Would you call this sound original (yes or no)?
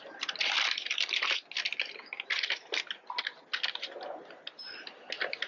yes